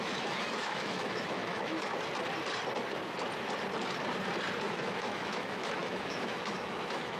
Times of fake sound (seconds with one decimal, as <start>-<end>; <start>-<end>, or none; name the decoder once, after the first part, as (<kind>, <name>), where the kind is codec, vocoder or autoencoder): 0.0-1.9 (autoencoder, DAC-VAE); 4.6-7.2